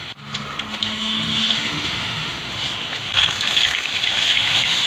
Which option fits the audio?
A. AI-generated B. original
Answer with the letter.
A